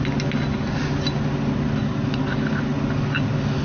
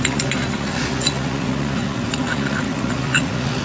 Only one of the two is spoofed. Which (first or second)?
second